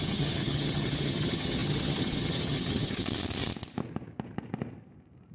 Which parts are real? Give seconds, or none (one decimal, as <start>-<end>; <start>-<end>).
3.0-5.3